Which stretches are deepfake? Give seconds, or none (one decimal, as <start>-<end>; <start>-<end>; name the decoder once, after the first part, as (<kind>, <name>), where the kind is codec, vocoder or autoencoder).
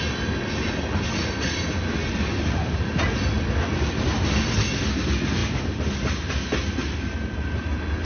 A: none